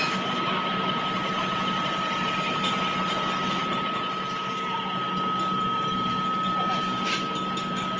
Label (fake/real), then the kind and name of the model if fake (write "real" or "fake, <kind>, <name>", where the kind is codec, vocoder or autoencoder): real